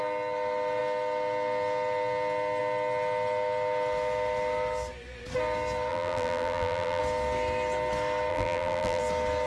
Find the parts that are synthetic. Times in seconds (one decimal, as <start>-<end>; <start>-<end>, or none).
5.9-7.0; 8.3-9.0